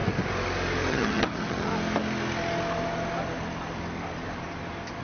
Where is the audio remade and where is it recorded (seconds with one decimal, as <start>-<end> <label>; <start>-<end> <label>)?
0.0-0.9 recorded; 0.9-1.7 remade; 1.7-5.0 recorded